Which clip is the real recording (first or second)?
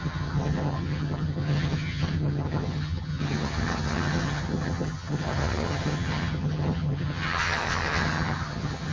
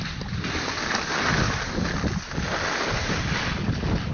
second